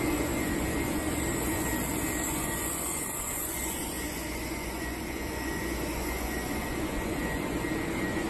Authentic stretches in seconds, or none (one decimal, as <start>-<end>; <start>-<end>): 1.7-2.3